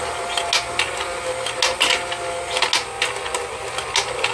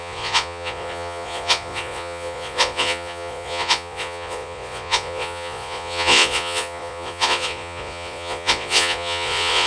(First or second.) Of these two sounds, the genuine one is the first